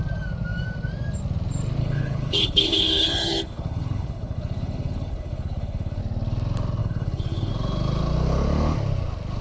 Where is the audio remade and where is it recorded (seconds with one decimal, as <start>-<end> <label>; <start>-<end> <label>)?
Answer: 0.0-1.8 recorded; 1.8-6.0 remade; 6.0-6.8 recorded; 6.8-7.5 remade; 7.5-9.4 recorded